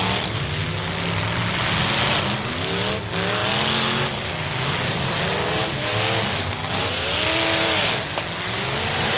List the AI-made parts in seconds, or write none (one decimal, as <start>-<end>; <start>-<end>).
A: none